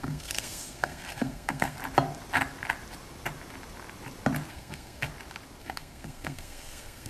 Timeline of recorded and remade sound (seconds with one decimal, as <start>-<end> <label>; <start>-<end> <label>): 0.0-1.8 remade; 1.8-4.5 recorded; 4.5-5.1 remade; 5.1-5.6 recorded; 5.6-7.1 remade